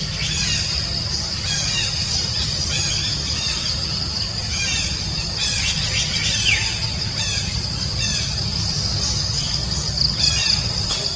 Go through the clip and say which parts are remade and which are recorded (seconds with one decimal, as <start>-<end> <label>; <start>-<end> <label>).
0.0-1.9 recorded; 1.9-3.7 remade; 3.7-11.2 recorded